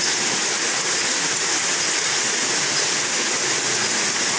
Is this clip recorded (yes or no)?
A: no